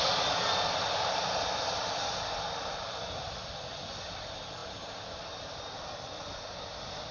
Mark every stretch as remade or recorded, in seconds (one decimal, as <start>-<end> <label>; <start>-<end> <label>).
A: 0.0-4.6 recorded; 4.6-5.2 remade; 5.2-7.1 recorded